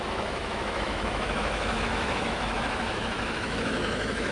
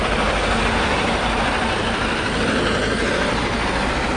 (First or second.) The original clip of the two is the second